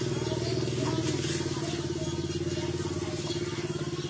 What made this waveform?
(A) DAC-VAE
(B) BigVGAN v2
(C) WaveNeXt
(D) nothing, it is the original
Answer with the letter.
D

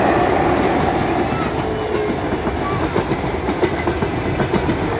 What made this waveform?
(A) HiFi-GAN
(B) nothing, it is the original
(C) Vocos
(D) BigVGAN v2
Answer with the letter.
B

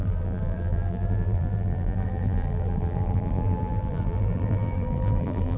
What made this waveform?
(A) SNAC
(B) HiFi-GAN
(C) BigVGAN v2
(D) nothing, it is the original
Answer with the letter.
C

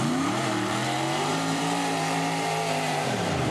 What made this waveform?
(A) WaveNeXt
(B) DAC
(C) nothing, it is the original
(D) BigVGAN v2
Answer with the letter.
D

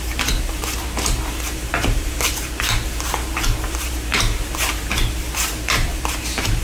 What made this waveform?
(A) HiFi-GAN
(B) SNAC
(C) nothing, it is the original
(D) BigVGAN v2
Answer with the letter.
D